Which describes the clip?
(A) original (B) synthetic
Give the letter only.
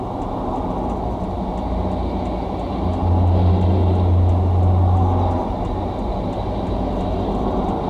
A